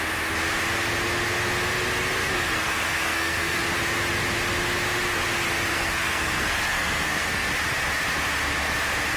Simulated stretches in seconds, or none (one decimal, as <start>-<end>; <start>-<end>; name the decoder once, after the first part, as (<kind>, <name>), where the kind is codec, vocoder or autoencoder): 2.2-3.6 (codec, SNAC); 5.7-7.5